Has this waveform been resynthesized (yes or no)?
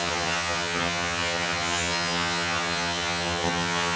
yes